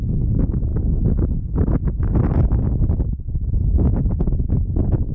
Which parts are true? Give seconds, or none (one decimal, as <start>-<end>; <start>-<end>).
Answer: 0.0-5.1